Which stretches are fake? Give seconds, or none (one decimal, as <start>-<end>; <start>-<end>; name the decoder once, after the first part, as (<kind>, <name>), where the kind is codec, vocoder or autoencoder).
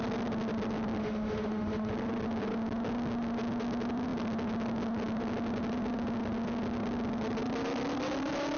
1.0-1.9 (autoencoder, DAC-VAE)